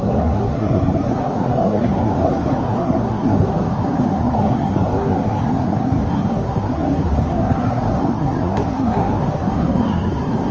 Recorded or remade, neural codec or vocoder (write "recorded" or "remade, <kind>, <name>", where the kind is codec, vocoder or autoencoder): remade, codec, SNAC